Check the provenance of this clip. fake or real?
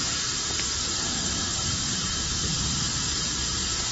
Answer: fake